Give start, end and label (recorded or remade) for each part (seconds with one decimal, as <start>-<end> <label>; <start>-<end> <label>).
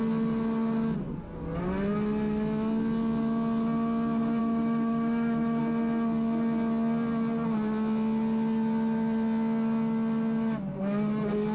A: 0.0-4.4 recorded; 4.4-5.6 remade; 5.6-11.5 recorded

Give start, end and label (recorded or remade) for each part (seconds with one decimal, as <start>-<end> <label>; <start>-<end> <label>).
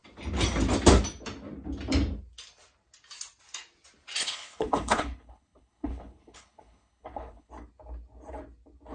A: 0.0-4.2 recorded; 4.2-7.5 remade; 7.5-8.9 recorded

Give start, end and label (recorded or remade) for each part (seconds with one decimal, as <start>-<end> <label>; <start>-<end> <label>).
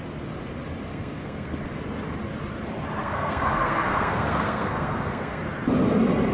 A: 0.0-0.9 recorded; 0.9-1.6 remade; 1.6-3.0 recorded; 3.0-5.4 remade; 5.4-6.3 recorded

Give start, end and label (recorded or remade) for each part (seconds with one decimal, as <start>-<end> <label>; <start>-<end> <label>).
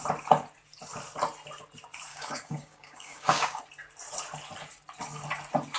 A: 0.0-2.1 recorded; 2.1-3.6 remade; 3.6-5.8 recorded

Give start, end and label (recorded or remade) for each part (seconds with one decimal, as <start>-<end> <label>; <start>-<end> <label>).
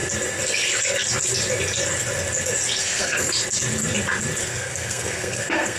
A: 0.0-2.8 recorded; 2.8-3.3 remade; 3.3-4.4 recorded; 4.4-5.8 remade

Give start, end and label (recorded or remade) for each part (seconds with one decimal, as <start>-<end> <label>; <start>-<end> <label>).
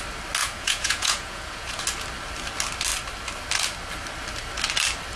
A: 0.0-0.4 recorded; 0.4-1.8 remade; 1.8-5.2 recorded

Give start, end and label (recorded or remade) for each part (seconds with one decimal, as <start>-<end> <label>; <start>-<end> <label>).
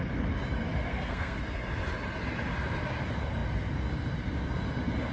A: 0.0-0.9 recorded; 0.9-1.4 remade; 1.4-5.1 recorded